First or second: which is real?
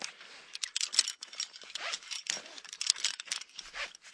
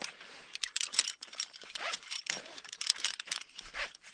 first